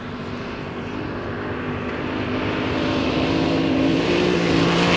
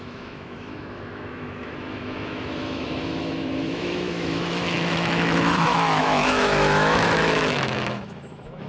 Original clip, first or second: first